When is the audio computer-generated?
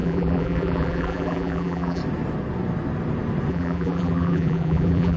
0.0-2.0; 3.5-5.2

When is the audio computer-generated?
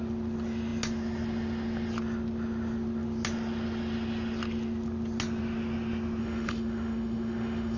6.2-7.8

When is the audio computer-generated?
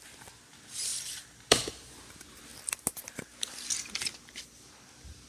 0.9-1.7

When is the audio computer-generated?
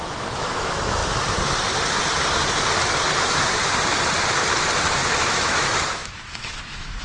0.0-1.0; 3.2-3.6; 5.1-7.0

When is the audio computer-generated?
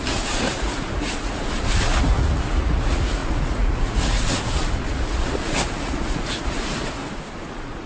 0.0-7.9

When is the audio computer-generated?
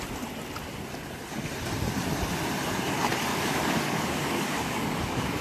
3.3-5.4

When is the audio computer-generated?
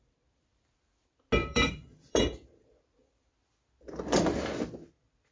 1.4-2.2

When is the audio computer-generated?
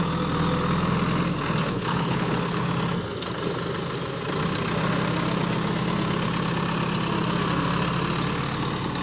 1.6-2.7